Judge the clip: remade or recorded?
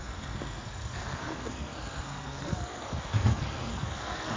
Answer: remade